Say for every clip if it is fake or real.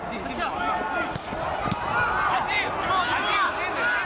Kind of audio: real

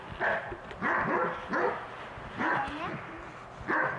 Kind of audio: real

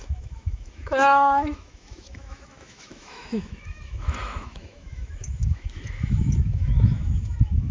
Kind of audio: fake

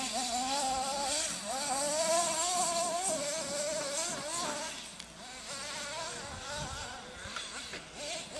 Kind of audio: real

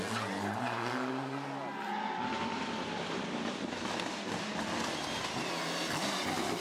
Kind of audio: real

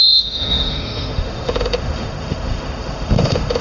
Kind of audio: fake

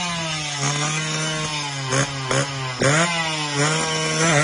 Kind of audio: real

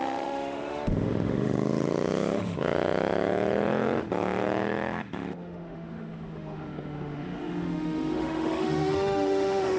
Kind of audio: fake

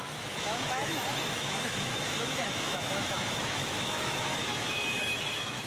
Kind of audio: fake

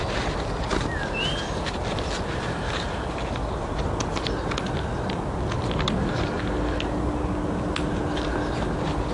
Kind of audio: real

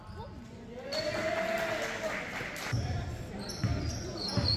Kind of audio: real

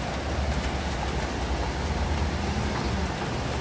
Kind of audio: real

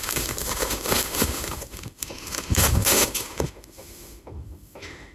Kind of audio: fake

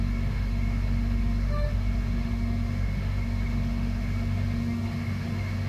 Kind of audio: fake